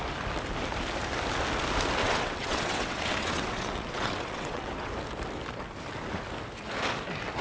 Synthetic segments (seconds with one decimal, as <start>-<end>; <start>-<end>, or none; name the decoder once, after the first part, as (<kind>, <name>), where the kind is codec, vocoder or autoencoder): 2.0-4.9 (vocoder, WaveNeXt)